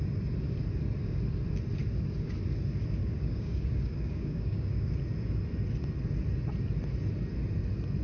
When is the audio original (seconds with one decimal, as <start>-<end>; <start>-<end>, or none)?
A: 0.0-3.0; 4.9-8.0